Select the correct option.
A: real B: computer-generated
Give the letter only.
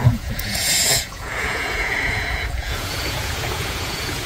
B